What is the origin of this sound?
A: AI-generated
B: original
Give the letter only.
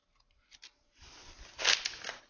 B